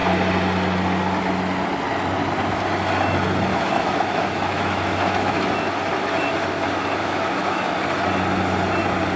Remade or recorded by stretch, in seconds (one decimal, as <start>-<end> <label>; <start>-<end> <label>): 0.0-3.5 recorded; 3.5-5.5 remade; 5.5-7.0 recorded; 7.0-7.7 remade; 7.7-9.2 recorded